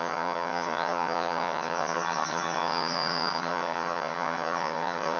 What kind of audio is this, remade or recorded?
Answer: remade